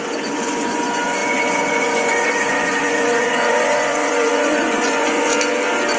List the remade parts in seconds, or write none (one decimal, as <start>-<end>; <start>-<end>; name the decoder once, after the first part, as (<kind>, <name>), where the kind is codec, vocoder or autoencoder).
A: 0.0-5.3 (vocoder, Vocos)